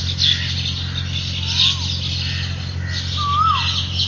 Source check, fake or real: real